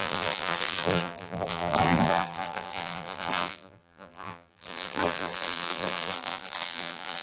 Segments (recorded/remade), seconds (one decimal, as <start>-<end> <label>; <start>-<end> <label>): 0.0-7.2 remade